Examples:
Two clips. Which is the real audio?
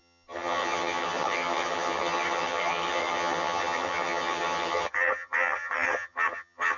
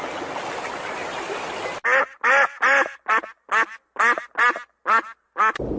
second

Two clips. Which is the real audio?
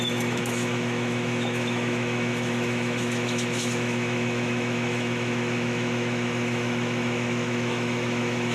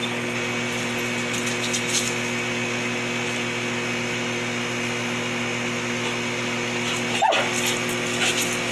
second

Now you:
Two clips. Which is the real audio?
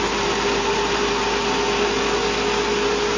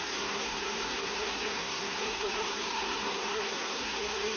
first